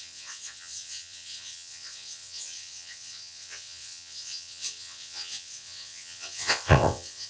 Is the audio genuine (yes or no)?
no